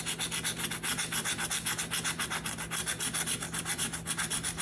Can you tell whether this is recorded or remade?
recorded